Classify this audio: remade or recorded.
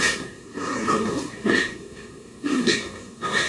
remade